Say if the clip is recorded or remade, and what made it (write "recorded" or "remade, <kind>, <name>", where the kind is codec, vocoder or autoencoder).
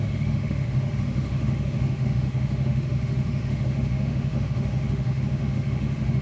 remade, autoencoder, DAC-VAE